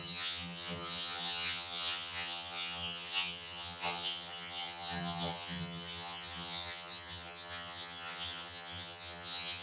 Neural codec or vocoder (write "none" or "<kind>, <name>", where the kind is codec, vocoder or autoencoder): vocoder, HiFi-GAN